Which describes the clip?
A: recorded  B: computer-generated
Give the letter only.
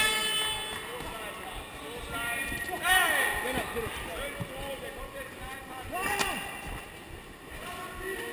A